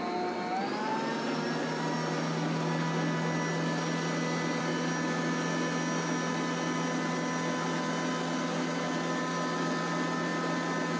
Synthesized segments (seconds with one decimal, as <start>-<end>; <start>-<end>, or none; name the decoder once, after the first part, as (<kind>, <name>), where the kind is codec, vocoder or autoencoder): none